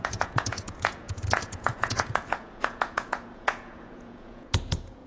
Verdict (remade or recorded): remade